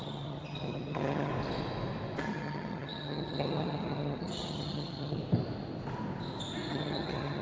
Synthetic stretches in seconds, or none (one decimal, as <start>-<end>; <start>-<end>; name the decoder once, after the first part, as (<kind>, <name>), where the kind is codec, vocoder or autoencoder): 0.0-1.3 (vocoder, HiFi-GAN); 2.2-5.2; 6.7-7.4